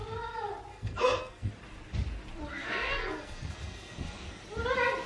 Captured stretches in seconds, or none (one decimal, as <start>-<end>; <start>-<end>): 0.0-0.7; 1.5-2.5; 4.4-5.1